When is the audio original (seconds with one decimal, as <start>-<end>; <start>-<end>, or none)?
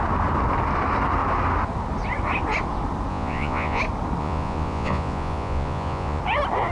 0.0-3.1; 3.8-4.2; 6.2-6.7